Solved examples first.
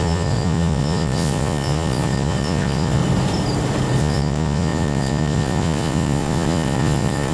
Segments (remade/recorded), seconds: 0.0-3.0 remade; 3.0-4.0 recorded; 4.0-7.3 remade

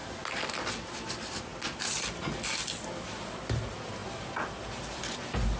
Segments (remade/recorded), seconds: 0.0-5.6 recorded

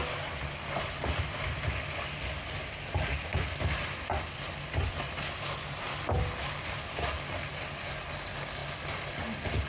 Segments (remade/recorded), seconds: 0.0-9.7 recorded

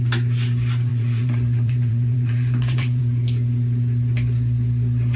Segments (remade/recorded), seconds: 0.0-0.9 recorded; 0.9-3.0 remade; 3.0-5.2 recorded

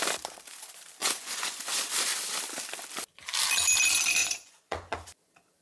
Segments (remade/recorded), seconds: 0.0-1.0 recorded; 1.0-1.7 remade; 1.7-4.2 recorded; 4.2-5.0 remade; 5.0-5.6 recorded

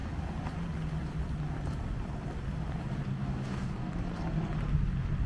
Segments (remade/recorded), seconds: 0.0-3.1 recorded; 3.1-3.9 remade; 3.9-5.3 recorded

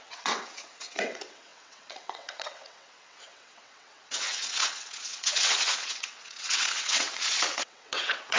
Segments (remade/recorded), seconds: 0.0-8.4 remade